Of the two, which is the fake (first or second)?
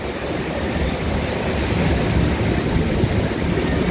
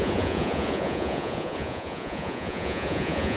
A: second